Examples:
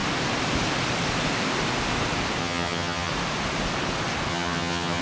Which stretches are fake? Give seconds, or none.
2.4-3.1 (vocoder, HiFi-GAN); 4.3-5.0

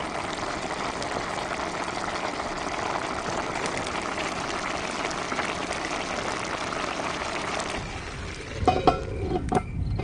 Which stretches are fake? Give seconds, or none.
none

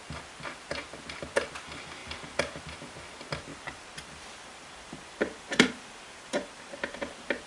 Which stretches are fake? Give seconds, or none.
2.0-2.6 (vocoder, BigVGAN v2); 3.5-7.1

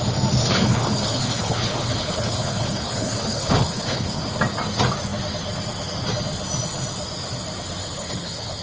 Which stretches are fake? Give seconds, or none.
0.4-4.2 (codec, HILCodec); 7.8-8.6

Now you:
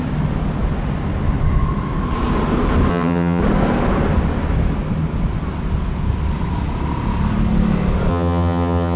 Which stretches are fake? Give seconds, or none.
2.9-3.4 (vocoder, HiFi-GAN); 8.1-9.0

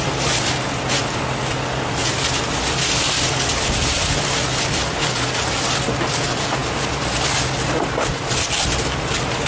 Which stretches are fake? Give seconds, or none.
none